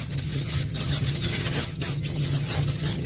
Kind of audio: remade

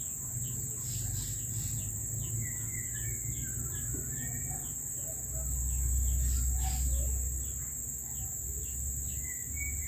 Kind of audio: recorded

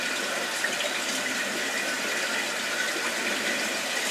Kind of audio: remade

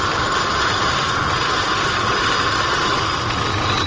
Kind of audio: recorded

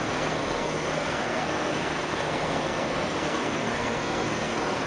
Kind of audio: remade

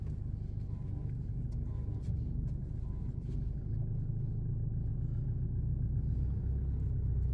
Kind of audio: recorded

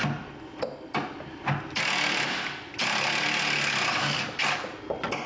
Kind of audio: recorded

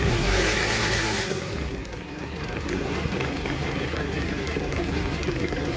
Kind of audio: remade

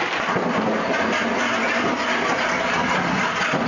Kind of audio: recorded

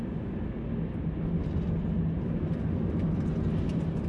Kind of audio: recorded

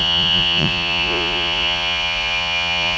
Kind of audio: remade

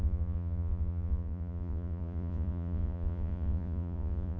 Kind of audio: remade